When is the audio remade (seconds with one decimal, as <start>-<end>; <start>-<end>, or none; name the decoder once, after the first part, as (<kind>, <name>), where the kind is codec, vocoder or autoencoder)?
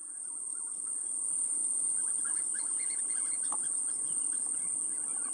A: none